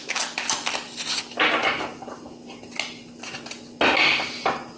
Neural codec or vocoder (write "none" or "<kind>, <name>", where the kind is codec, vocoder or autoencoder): none